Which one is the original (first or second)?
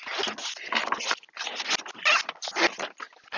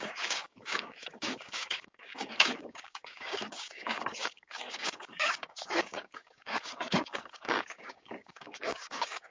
first